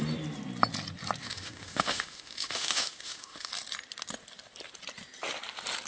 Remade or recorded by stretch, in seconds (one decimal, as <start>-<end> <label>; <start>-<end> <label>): 0.0-1.2 recorded; 1.2-3.5 remade; 3.5-5.9 recorded